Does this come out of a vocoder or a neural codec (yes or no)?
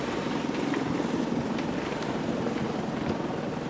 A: no